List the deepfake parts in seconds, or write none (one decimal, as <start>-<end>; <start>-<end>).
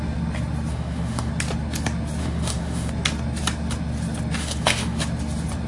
0.7-1.3; 2.2-2.9; 4.4-5.0